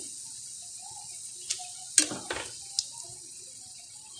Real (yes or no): yes